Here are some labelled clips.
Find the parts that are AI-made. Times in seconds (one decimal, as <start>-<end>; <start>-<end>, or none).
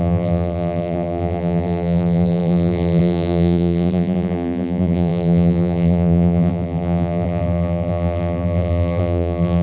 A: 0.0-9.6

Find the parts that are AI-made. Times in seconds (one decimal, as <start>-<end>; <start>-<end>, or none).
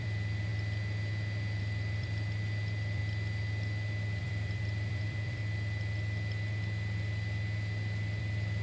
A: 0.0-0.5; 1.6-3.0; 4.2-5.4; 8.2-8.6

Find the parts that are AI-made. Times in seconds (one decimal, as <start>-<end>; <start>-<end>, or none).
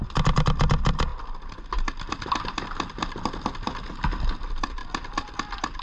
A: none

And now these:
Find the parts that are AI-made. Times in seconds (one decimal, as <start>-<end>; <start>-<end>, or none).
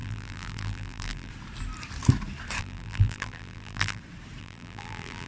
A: 0.0-1.3; 2.6-4.0; 4.4-5.3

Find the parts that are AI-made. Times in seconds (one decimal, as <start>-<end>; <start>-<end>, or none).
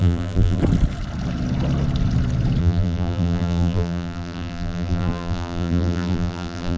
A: 0.0-0.6; 2.6-6.8